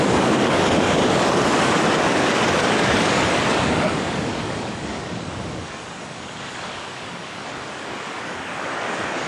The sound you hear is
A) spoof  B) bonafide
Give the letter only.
A